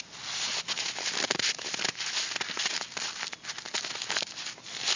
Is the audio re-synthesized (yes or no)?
no